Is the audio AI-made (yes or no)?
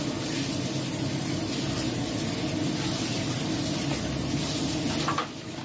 no